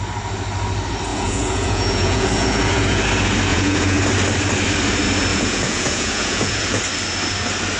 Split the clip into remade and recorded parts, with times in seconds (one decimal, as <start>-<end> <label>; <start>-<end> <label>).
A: 0.0-1.1 recorded; 1.1-3.0 remade; 3.0-3.5 recorded; 3.5-4.0 remade; 4.0-5.3 recorded; 5.3-6.8 remade; 6.8-7.8 recorded